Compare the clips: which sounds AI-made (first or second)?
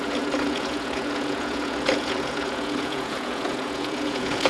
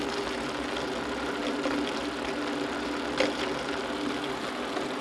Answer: first